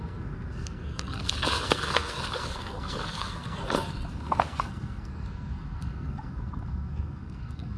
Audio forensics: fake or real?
fake